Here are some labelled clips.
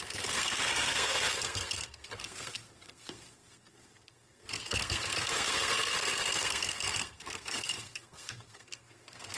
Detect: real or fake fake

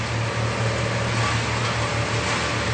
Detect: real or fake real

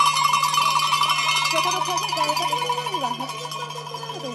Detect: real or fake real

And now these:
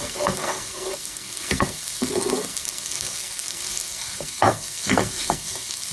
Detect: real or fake fake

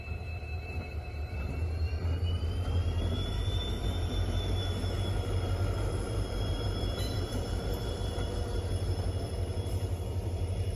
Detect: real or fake fake